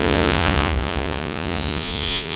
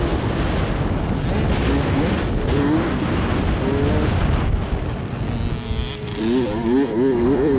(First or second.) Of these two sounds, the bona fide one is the second